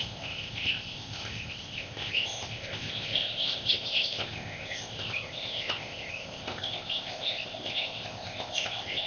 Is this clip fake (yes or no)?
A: yes